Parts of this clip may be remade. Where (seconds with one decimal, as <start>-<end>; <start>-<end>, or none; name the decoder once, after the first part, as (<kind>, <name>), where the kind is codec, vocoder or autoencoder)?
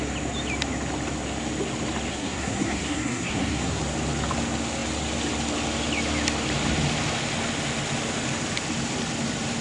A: 2.1-3.8 (codec, SNAC)